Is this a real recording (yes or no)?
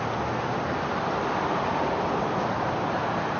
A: yes